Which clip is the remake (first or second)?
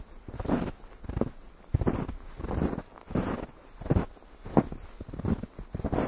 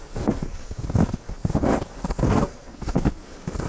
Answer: second